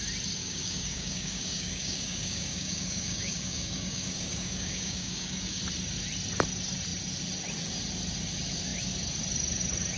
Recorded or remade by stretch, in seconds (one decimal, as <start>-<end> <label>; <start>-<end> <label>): 0.0-0.4 recorded; 0.4-5.6 remade; 5.6-10.0 recorded